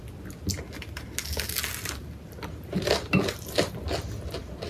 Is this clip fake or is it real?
real